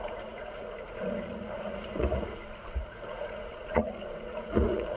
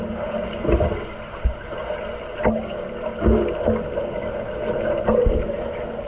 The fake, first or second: first